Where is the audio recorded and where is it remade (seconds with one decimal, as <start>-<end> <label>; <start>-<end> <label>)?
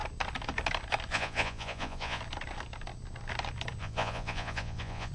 0.0-1.1 recorded; 1.1-2.2 remade; 2.2-3.8 recorded; 3.8-5.1 remade